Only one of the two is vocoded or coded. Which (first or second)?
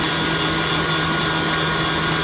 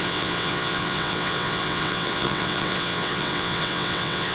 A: second